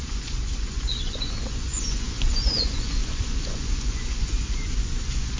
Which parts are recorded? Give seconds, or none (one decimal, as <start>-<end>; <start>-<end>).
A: none